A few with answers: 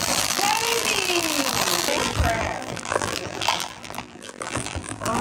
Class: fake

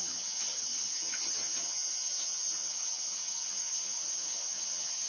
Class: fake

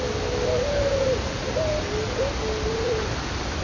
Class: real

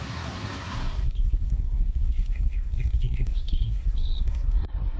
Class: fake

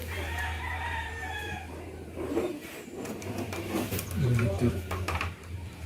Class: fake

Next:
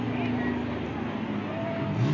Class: real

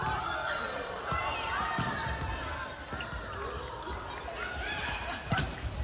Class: real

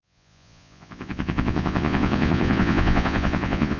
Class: fake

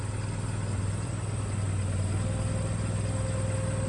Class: real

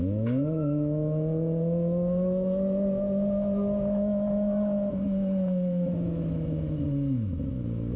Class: fake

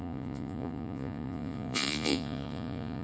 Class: fake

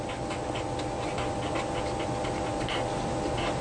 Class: real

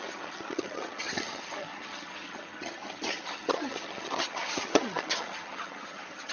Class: fake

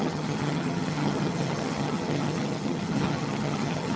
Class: fake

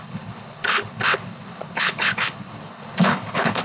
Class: fake